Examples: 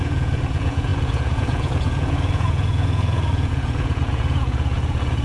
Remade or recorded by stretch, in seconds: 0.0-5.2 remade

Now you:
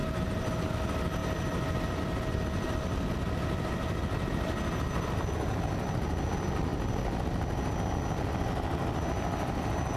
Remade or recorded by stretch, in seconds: 0.0-0.5 remade; 0.5-1.2 recorded; 1.2-3.1 remade; 3.1-10.0 recorded

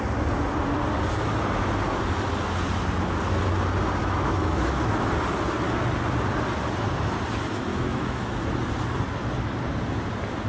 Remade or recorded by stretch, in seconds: 0.0-4.0 recorded; 4.0-5.1 remade; 5.1-7.7 recorded; 7.7-8.4 remade; 8.4-10.5 recorded

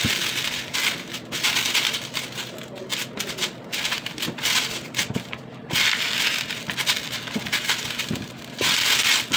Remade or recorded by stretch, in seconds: 0.0-9.4 recorded

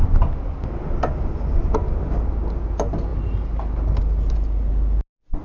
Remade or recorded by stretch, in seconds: 0.0-5.4 recorded

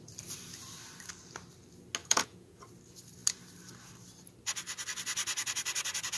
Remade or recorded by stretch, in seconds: 0.0-2.0 recorded; 2.0-2.6 remade; 2.6-6.2 recorded

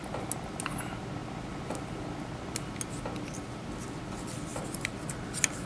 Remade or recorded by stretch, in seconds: 0.0-5.7 recorded

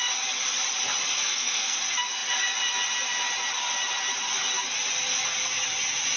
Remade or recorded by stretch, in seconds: 0.0-1.2 recorded; 1.2-1.8 remade; 1.8-6.2 recorded